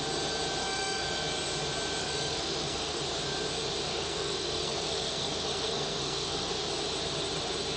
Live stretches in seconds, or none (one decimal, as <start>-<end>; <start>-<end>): 0.0-0.6; 1.1-2.0; 3.0-3.9; 6.5-7.8